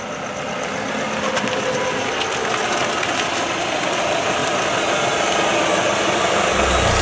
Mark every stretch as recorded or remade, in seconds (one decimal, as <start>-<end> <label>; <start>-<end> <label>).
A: 0.0-7.0 recorded